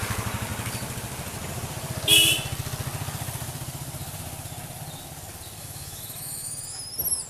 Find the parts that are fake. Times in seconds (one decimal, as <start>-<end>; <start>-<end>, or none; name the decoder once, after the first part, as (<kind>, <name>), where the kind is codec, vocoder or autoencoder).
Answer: 5.6-6.8 (autoencoder, DAC-VAE)